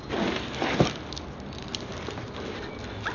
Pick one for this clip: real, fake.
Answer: real